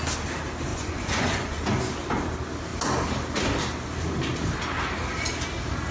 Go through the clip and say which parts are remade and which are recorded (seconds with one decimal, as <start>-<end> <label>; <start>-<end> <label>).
0.0-0.7 recorded; 0.7-1.6 remade; 1.6-5.9 recorded